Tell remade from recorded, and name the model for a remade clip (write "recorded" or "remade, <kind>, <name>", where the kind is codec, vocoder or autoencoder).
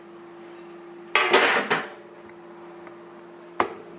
recorded